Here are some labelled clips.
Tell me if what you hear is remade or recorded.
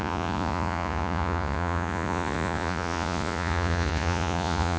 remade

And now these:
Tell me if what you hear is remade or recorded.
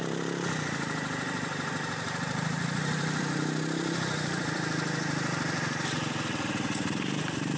remade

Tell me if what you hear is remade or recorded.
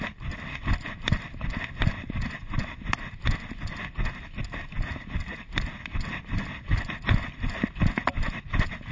recorded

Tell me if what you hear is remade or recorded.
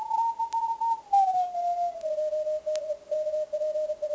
recorded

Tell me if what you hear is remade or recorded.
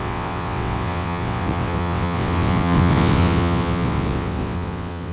remade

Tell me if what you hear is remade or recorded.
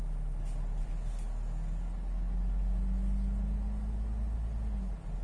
recorded